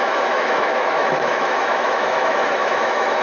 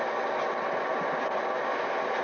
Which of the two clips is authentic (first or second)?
second